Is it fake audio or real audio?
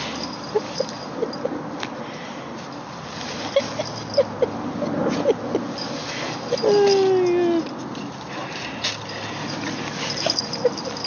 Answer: real